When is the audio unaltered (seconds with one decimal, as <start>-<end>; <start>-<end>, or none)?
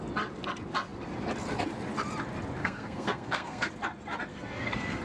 0.0-2.6; 3.7-4.3